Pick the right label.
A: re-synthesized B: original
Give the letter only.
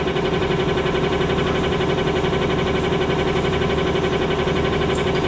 B